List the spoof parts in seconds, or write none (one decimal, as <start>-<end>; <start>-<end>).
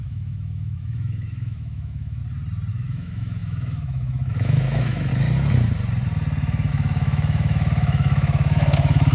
0.0-2.2; 2.7-5.1; 6.7-9.1